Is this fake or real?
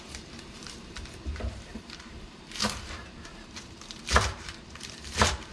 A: fake